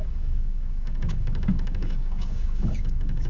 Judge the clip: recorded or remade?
remade